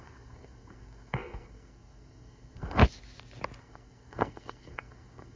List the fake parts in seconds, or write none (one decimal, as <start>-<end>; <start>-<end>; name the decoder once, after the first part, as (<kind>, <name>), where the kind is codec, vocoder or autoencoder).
0.0-2.8 (codec, SNAC); 3.6-5.4